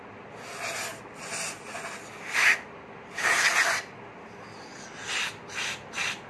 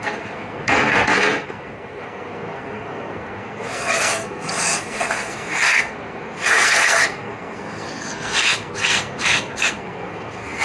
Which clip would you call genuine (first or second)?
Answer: first